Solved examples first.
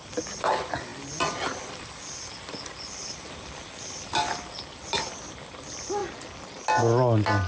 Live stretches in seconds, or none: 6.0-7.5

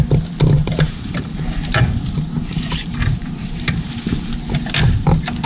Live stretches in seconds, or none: 0.0-0.6; 2.0-2.4; 4.3-5.5

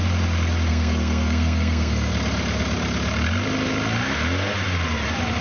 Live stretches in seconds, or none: 0.0-0.7; 2.1-5.4